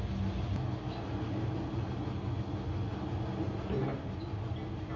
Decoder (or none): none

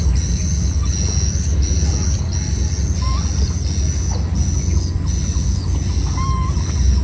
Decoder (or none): none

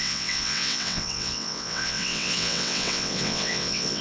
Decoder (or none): vocoder, WaveNeXt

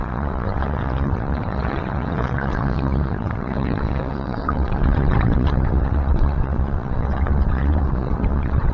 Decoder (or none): vocoder, WaveNeXt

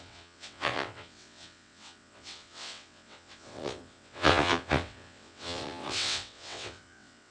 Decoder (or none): vocoder, WaveNeXt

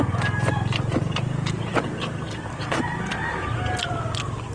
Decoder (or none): none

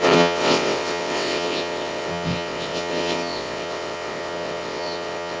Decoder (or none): vocoder, WaveNeXt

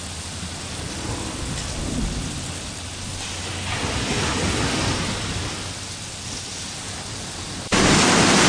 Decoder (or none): none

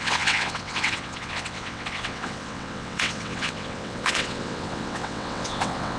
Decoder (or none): vocoder, WaveNeXt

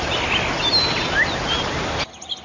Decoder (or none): none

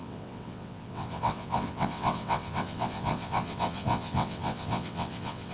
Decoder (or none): vocoder, WaveNeXt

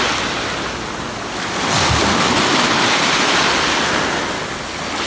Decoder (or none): none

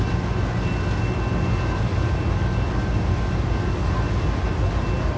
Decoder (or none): none